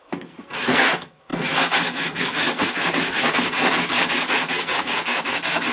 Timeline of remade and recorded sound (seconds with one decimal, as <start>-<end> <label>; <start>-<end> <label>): 0.0-5.7 remade